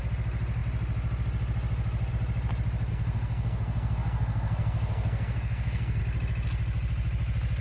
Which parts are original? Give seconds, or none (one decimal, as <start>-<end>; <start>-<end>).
0.0-2.9; 6.0-7.6